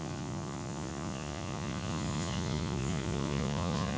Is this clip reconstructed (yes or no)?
yes